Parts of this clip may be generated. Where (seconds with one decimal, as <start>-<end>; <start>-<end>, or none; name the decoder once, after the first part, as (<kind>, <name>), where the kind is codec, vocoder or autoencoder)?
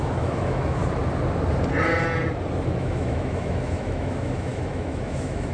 0.0-0.8 (autoencoder, DAC-VAE); 2.8-5.5